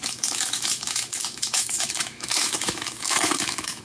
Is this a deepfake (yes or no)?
yes